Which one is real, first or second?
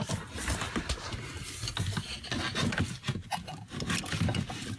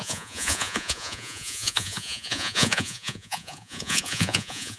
first